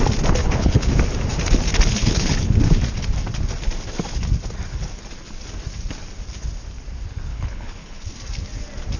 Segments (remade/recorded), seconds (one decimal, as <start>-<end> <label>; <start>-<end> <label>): 0.0-0.4 recorded; 0.4-0.9 remade; 0.9-2.0 recorded; 2.0-2.5 remade; 2.5-7.3 recorded; 7.3-8.1 remade; 8.1-9.0 recorded